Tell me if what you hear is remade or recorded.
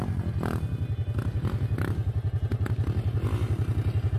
recorded